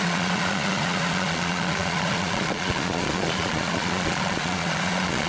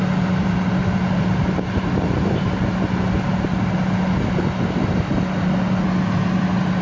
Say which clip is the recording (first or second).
second